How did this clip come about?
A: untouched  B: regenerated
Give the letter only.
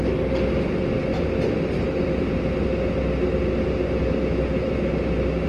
A